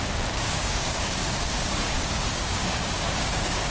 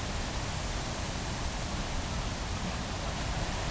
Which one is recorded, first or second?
second